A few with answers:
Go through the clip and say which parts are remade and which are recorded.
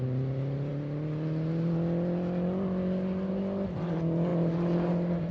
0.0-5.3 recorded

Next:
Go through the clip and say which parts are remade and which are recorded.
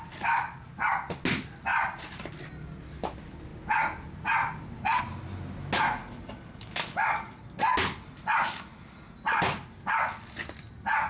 0.0-6.0 recorded; 6.0-7.4 remade; 7.4-11.1 recorded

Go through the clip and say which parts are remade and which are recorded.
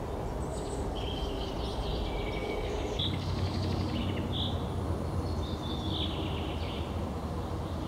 0.0-0.5 recorded; 0.5-1.5 remade; 1.5-2.4 recorded; 2.4-4.0 remade; 4.0-7.9 recorded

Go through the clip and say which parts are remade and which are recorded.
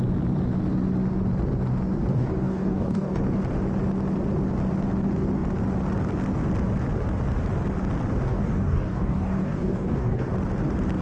0.0-2.1 recorded; 2.1-3.2 remade; 3.2-8.3 recorded; 8.3-10.3 remade; 10.3-11.0 recorded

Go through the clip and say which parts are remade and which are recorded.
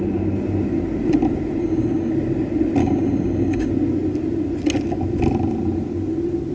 0.0-1.6 recorded; 1.6-2.1 remade; 2.1-2.8 recorded; 2.8-3.7 remade; 3.7-6.5 recorded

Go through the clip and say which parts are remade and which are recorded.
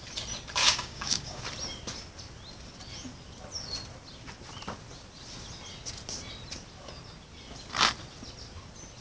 0.0-0.6 recorded; 0.6-1.4 remade; 1.4-9.0 recorded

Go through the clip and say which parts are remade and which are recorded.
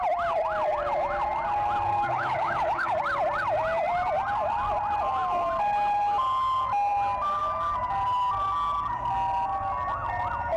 0.0-1.9 recorded; 1.9-3.0 remade; 3.0-10.6 recorded